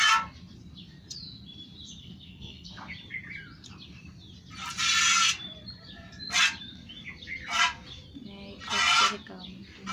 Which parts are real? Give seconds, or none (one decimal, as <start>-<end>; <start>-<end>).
0.0-2.0; 2.7-9.9